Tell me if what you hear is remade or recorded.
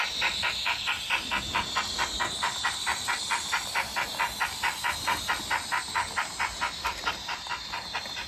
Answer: recorded